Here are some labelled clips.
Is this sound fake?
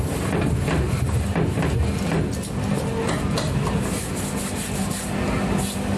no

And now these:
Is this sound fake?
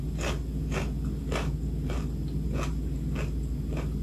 no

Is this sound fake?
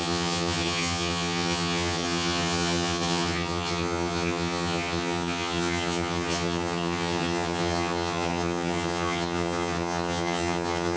yes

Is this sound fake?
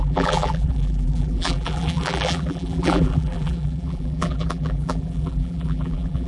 yes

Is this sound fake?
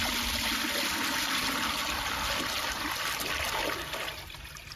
no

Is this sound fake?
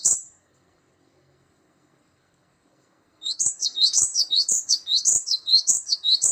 yes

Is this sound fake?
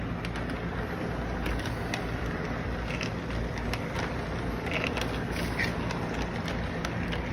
no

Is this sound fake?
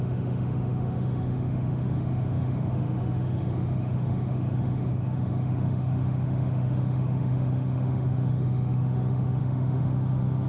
yes